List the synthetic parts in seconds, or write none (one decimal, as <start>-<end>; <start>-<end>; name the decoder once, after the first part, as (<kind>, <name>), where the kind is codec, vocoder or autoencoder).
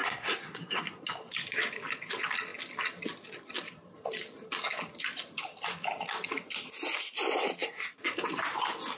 0.0-1.0 (codec, SNAC)